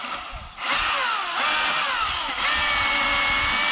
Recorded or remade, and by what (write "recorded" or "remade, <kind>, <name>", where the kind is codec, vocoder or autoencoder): recorded